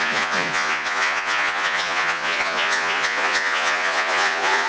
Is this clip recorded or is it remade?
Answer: remade